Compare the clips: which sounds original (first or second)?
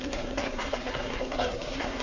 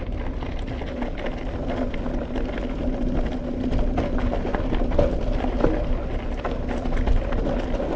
second